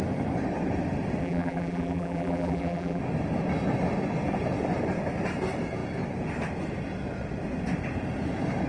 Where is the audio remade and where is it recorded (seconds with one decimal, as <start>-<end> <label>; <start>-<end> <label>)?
0.0-1.2 recorded; 1.2-3.0 remade; 3.0-8.7 recorded